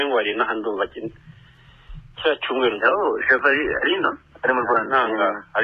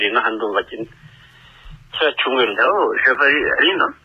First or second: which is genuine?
second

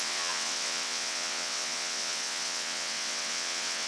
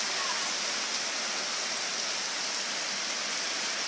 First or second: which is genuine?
second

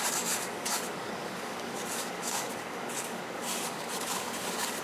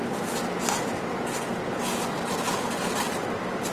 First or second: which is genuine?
second